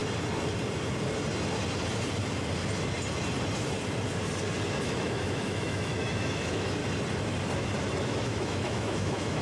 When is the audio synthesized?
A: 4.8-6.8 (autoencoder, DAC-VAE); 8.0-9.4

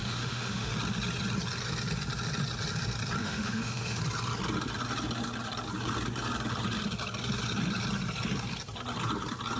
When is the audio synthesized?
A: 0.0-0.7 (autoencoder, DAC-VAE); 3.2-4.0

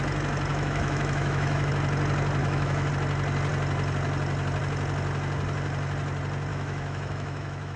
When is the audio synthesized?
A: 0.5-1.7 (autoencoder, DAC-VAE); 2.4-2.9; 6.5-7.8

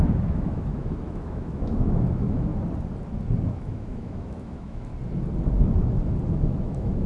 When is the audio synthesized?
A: 0.0-2.5 (autoencoder, DAC-VAE); 3.5-4.9; 6.3-7.1

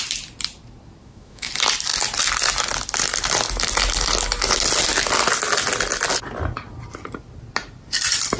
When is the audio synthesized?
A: 1.0-1.5 (autoencoder, DAC-VAE)

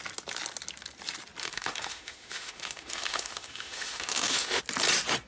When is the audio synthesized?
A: 1.4-4.6 (autoencoder, DAC-VAE)

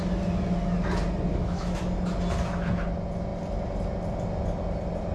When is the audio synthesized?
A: 1.3-1.8 (autoencoder, DAC-VAE)